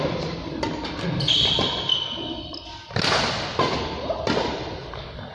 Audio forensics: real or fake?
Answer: real